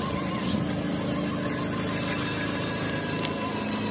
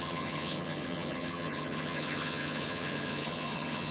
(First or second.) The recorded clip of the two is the first